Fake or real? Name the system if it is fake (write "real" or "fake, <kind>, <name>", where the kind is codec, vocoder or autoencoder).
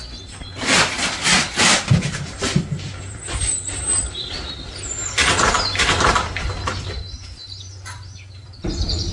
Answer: fake, vocoder, BigVGAN v2